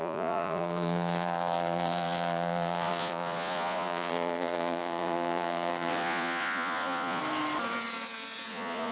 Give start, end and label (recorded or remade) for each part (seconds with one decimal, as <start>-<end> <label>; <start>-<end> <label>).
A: 0.0-7.2 remade; 7.2-8.5 recorded; 8.5-8.9 remade